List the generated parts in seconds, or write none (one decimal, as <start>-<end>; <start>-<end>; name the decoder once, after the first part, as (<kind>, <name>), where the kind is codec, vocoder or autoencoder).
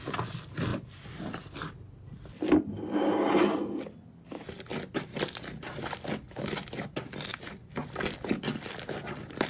none